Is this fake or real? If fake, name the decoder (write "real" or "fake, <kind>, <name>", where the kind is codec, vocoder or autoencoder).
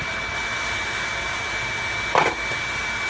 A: real